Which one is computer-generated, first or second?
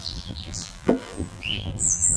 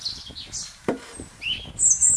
first